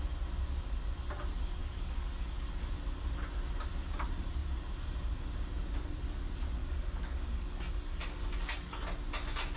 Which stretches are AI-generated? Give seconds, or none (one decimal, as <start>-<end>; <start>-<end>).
1.6-2.5; 6.6-8.8